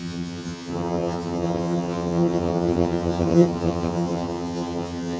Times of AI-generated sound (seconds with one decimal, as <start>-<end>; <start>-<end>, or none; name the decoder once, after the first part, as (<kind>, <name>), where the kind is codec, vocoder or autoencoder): 0.0-5.2 (vocoder, HiFi-GAN)

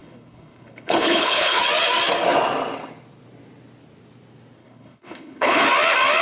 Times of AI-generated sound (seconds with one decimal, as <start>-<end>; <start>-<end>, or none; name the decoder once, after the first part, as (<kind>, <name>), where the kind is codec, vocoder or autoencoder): 0.0-1.6 (codec, HILCodec); 4.6-5.6